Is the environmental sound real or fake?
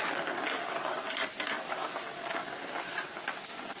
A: real